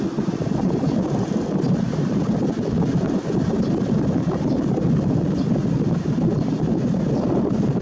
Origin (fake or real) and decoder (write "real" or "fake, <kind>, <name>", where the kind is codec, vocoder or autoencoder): real